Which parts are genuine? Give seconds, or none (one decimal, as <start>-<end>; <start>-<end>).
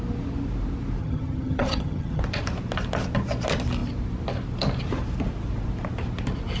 0.0-1.0; 2.2-6.6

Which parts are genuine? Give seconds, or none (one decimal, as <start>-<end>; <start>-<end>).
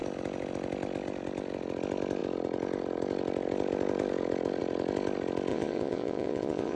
0.0-5.5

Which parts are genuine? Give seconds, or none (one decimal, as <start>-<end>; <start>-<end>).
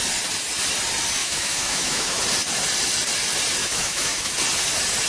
0.0-1.2; 2.2-3.6; 4.3-5.1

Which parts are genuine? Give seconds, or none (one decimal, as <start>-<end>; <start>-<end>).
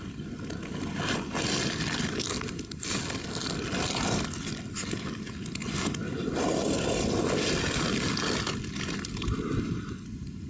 0.0-10.5